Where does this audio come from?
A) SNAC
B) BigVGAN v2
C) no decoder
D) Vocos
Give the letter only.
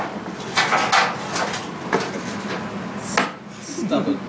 C